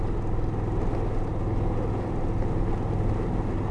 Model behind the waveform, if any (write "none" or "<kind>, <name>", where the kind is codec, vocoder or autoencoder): none